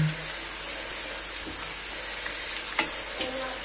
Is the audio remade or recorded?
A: recorded